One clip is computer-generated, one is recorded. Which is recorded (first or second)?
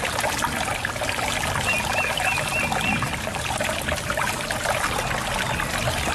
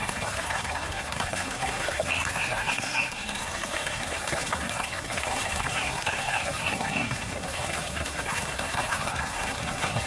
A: first